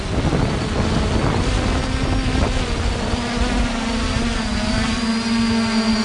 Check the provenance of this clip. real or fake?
real